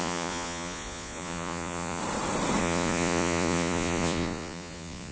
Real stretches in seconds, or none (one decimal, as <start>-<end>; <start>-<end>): 2.0-2.6